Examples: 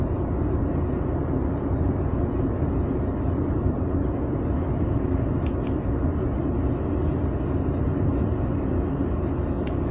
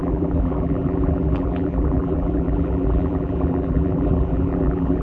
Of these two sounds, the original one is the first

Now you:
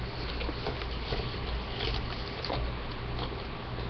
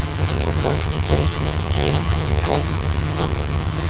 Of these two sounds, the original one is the first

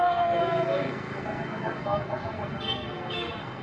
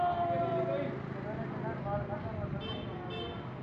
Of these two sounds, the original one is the second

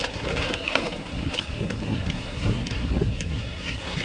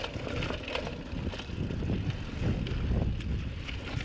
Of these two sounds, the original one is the second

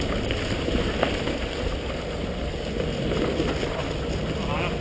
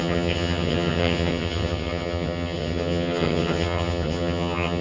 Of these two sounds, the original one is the first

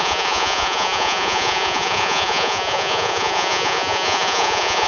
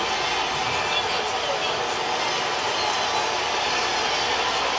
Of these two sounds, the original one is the second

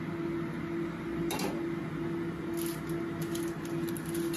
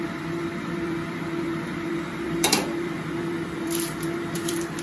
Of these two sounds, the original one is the first